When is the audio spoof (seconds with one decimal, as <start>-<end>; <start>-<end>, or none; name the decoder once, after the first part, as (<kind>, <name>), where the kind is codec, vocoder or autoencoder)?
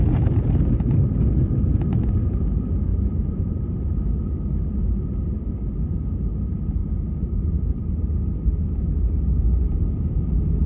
2.9-4.2 (vocoder, BigVGAN v2); 6.8-8.0